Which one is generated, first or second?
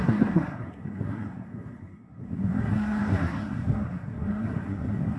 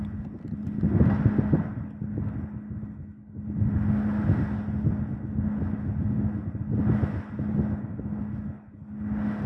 first